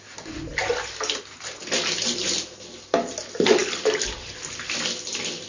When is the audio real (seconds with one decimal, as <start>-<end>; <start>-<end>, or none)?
0.0-5.5